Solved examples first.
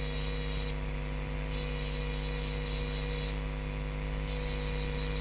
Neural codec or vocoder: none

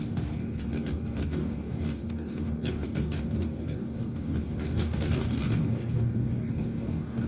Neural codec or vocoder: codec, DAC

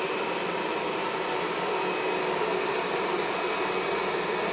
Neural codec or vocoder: none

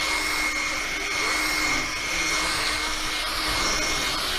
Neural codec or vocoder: none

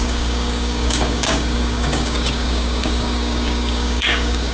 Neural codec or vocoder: codec, DAC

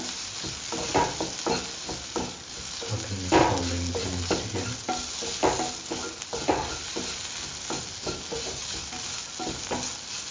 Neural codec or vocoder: none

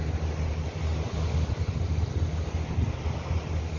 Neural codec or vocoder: none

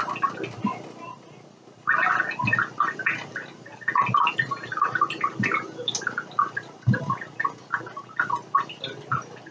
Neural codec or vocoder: none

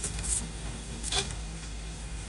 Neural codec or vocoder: codec, DAC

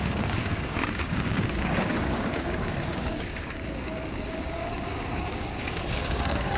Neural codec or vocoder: codec, DAC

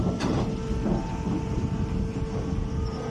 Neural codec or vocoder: none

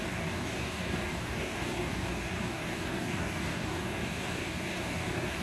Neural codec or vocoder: codec, DAC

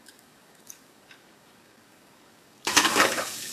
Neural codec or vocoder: codec, DAC